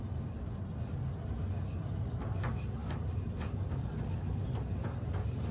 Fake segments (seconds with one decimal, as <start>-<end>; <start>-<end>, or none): none